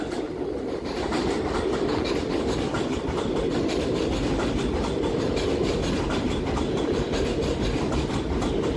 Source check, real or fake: real